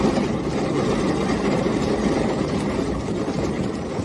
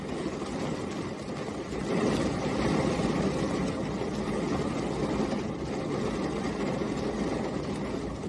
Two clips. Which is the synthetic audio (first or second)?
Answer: first